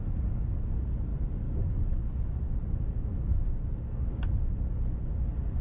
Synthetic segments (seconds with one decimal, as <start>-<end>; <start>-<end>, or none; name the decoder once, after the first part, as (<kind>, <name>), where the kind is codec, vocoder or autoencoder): 1.1-4.5 (vocoder, BigVGAN v2)